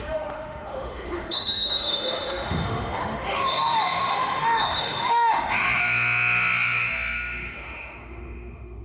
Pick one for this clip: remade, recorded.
remade